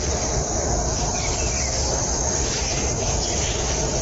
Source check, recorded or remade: recorded